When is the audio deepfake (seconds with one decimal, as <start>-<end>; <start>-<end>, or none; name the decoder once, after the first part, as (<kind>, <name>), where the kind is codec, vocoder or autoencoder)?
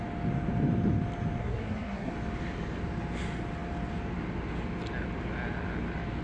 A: 1.4-2.1 (codec, SNAC)